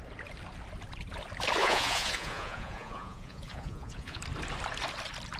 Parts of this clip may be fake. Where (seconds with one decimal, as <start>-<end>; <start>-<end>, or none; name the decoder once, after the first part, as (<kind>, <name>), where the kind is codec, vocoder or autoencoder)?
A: 1.6-4.2 (vocoder, Vocos)